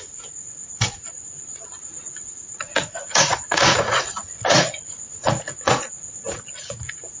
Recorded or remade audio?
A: remade